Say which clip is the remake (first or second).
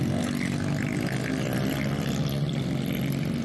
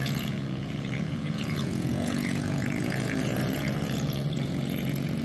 second